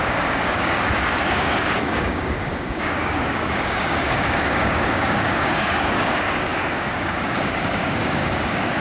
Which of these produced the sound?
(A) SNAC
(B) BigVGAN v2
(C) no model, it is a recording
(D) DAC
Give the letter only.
D